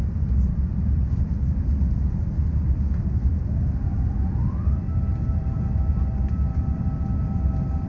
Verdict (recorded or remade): recorded